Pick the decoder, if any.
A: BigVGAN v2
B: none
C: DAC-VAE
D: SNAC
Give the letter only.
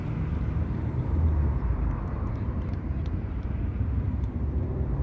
A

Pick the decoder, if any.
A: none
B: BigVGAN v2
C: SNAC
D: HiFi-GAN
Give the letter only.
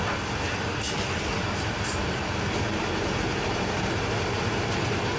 A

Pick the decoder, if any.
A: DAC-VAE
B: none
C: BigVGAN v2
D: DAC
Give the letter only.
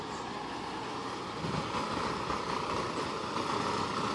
B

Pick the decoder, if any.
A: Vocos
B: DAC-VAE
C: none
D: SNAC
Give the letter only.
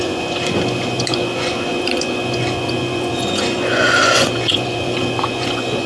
A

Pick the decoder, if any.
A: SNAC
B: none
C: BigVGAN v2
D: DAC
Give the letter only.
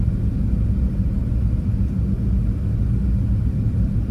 B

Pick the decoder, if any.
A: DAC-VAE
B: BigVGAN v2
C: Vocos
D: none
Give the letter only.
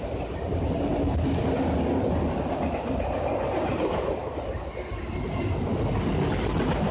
D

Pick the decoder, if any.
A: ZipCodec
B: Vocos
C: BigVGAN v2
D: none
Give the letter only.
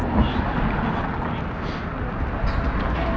D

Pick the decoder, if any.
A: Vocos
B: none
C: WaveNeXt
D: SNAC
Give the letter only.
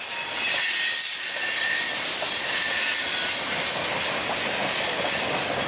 B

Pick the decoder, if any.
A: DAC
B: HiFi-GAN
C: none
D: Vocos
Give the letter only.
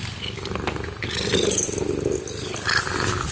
C